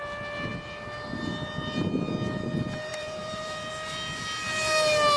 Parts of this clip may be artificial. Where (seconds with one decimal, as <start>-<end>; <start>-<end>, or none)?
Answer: 2.9-3.7